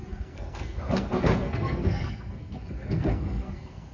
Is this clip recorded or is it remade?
remade